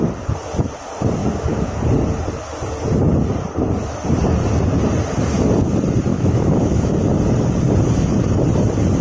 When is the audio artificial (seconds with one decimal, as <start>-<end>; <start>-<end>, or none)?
1.2-1.8; 6.1-6.9